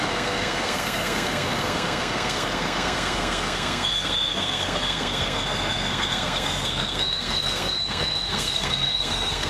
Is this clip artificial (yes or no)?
yes